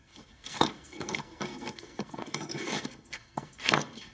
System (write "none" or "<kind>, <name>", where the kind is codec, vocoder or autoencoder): codec, SNAC